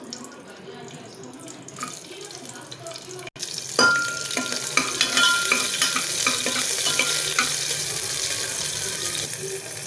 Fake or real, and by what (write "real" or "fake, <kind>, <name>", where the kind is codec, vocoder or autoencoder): real